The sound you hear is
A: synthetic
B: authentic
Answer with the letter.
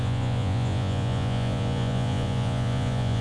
A